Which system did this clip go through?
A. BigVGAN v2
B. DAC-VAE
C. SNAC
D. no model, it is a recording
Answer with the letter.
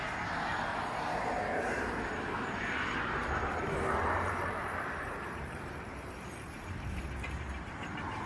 A